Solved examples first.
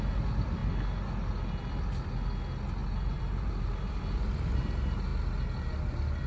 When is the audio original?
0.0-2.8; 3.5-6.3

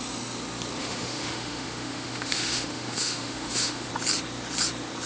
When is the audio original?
0.0-0.8; 3.9-5.1

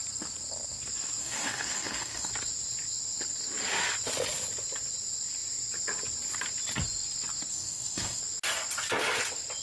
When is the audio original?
0.0-1.2; 2.3-7.5; 8.2-9.6